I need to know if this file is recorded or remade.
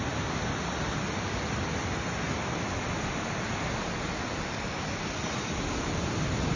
recorded